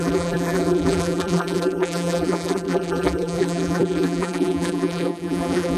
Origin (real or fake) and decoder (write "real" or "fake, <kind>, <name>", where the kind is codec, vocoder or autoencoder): fake, vocoder, BigVGAN v2